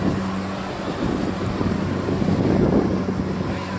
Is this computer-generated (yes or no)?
no